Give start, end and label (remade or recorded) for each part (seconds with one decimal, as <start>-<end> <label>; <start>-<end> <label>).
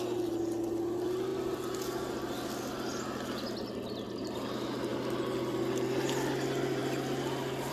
0.0-7.7 recorded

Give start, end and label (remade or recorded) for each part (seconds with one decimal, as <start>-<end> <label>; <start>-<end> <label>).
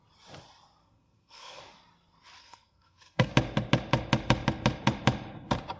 0.0-0.8 recorded; 0.8-1.6 remade; 1.6-2.4 recorded; 2.4-3.3 remade; 3.3-5.8 recorded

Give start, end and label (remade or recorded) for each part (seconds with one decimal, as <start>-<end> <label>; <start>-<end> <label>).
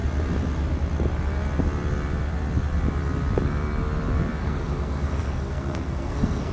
0.0-4.4 recorded; 4.4-6.5 remade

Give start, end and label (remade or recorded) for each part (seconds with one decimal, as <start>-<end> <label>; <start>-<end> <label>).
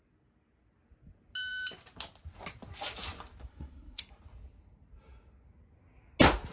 0.0-3.5 recorded; 3.5-4.0 remade; 4.0-6.5 recorded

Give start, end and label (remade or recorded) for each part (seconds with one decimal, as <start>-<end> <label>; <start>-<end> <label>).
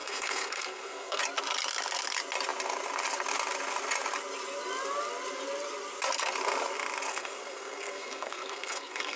0.0-1.2 remade; 1.2-7.1 recorded; 7.1-9.2 remade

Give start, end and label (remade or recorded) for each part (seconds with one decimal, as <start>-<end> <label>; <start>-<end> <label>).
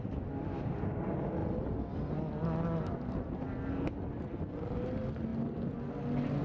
0.0-6.4 recorded